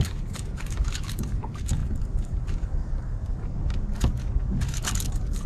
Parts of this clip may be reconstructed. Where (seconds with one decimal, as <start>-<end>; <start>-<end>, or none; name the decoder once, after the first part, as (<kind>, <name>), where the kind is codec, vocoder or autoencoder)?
0.0-5.5 (codec, DAC)